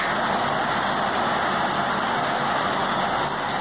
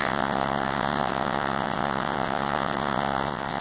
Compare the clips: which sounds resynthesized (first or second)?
second